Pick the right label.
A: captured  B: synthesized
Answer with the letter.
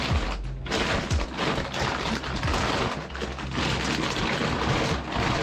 A